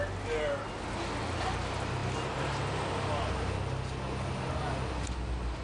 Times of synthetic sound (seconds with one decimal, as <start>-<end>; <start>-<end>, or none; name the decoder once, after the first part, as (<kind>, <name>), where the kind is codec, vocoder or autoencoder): none